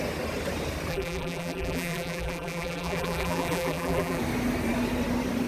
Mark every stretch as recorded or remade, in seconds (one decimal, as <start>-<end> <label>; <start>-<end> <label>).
0.0-0.9 recorded; 0.9-4.2 remade; 4.2-5.5 recorded